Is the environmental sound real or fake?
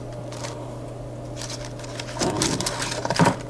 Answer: real